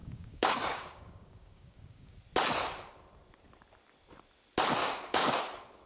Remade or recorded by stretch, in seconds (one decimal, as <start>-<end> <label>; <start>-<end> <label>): 0.0-2.2 remade; 2.2-4.8 recorded; 4.8-5.4 remade; 5.4-5.9 recorded